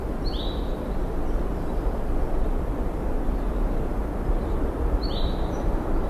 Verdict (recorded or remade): remade